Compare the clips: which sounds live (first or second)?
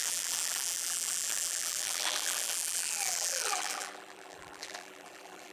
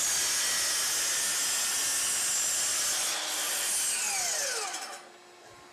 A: second